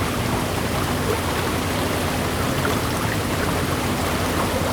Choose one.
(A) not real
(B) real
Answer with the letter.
B